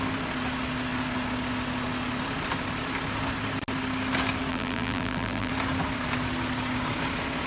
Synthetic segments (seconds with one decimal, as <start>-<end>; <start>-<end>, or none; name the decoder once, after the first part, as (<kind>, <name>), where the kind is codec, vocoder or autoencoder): 4.5-5.5 (vocoder, BigVGAN v2)